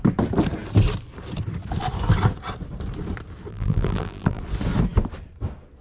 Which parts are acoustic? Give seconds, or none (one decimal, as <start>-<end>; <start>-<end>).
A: 0.0-3.5; 4.4-5.8